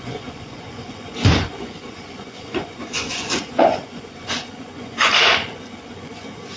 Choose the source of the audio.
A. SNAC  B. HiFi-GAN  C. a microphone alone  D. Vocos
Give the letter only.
D